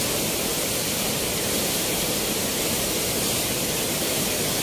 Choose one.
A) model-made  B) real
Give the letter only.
B